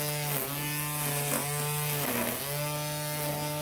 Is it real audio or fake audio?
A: real